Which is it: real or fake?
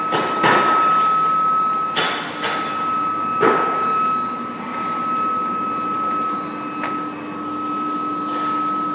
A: real